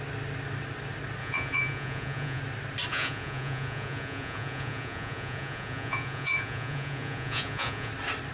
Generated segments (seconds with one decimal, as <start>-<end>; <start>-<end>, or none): 1.2-2.4; 2.9-7.9